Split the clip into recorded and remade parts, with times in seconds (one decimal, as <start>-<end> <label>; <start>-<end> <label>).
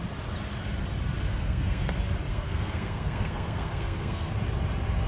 0.0-1.3 recorded; 1.3-1.9 remade; 1.9-2.3 recorded; 2.3-4.3 remade; 4.3-5.1 recorded